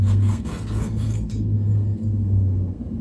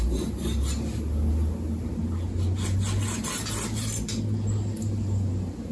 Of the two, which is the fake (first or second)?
first